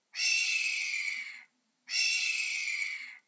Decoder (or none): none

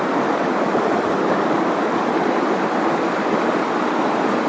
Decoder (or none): none